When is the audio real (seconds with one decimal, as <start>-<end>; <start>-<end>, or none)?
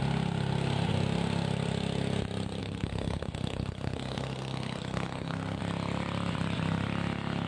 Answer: 0.0-2.6; 5.6-7.5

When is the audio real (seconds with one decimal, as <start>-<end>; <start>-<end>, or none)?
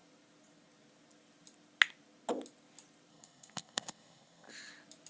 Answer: 0.0-3.1; 4.5-5.1